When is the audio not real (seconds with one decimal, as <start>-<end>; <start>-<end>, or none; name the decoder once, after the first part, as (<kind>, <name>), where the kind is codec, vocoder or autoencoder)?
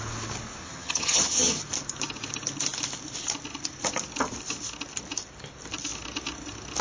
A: 0.6-1.6 (vocoder, HiFi-GAN)